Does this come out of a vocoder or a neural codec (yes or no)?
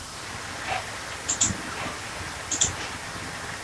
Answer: no